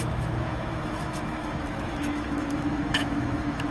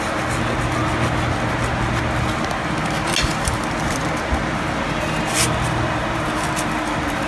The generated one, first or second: first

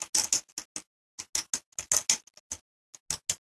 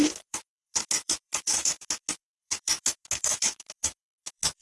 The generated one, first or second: second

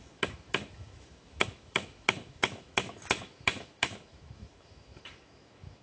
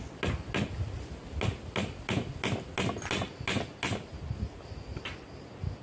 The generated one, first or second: first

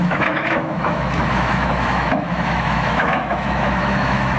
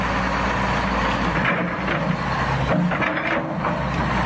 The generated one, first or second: first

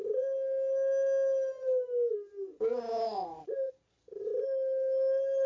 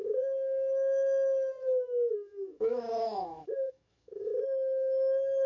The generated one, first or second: second